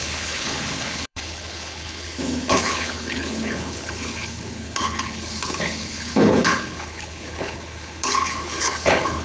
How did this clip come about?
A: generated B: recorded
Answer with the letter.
A